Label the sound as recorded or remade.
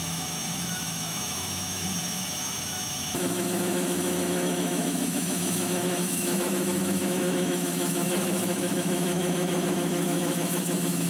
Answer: remade